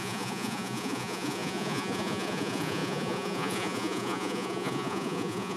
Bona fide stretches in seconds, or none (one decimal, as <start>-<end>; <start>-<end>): none